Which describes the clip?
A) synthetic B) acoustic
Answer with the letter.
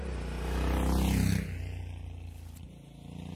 B